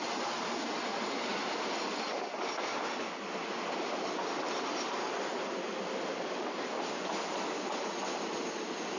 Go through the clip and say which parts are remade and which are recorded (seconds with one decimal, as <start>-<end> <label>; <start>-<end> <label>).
0.0-9.0 recorded